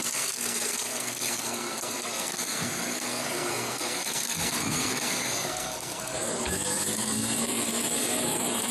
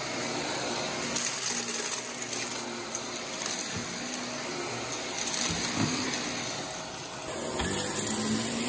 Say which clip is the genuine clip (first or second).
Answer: second